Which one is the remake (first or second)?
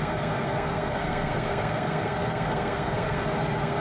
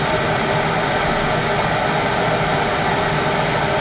first